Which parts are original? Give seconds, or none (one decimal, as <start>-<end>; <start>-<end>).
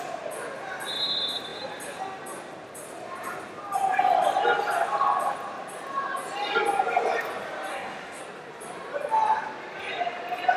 0.0-7.7; 8.2-10.6